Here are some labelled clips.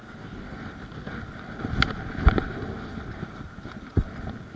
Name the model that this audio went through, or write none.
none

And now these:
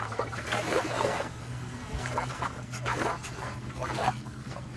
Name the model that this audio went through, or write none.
codec, SNAC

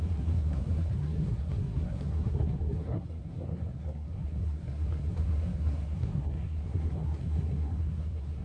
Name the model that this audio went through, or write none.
codec, SNAC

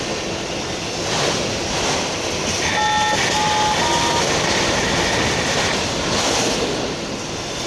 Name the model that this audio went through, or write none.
none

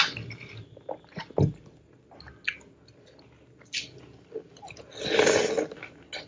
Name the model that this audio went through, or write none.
none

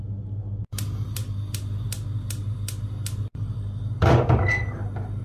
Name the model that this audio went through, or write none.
none